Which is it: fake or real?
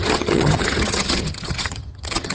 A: fake